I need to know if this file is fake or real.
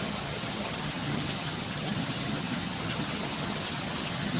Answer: fake